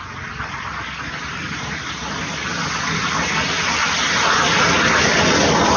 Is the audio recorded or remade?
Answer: recorded